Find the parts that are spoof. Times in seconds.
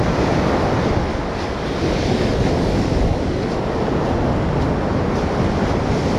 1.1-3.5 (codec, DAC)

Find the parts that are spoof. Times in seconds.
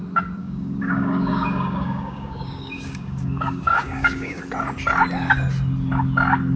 0.4-4.4 (codec, DAC)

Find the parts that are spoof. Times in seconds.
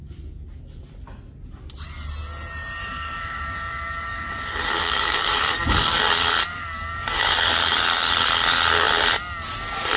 2.8-6.0 (codec, DAC); 6.5-8.1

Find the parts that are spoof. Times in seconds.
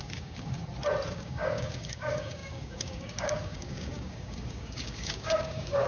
0.0-0.6 (codec, DAC); 1.1-5.9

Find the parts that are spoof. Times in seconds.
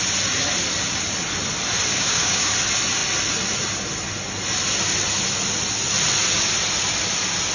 1.9-2.5 (codec, DAC)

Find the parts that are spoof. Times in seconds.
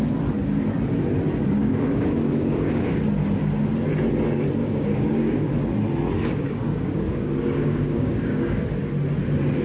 1.6-3.1 (codec, DAC); 4.6-5.5; 6.2-8.6